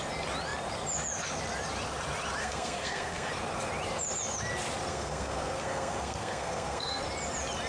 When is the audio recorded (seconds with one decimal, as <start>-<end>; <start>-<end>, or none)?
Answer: 0.0-2.4; 3.3-4.9; 7.0-7.7